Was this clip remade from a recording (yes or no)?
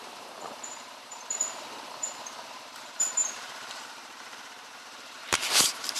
yes